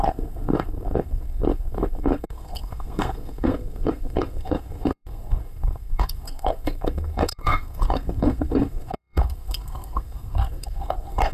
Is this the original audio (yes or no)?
no